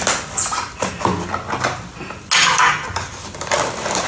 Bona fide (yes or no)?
yes